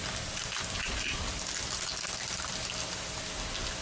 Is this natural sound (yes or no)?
yes